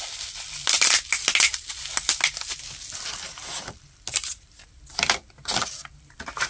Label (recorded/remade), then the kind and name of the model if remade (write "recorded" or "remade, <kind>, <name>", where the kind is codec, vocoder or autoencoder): recorded